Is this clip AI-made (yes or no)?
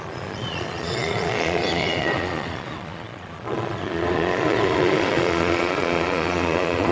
yes